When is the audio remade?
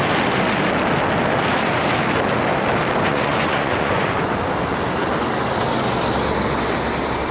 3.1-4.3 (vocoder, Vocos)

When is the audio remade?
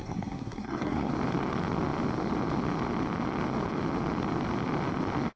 0.0-1.1 (codec, SNAC)